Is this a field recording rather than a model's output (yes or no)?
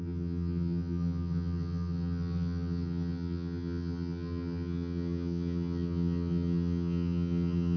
no